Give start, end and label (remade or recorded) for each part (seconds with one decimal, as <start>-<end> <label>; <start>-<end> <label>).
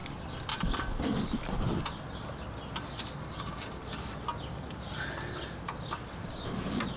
0.0-3.2 recorded; 3.2-3.8 remade; 3.8-7.0 recorded